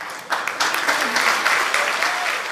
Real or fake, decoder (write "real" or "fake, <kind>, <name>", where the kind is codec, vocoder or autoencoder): real